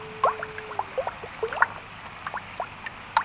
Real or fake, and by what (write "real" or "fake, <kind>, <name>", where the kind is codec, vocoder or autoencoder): real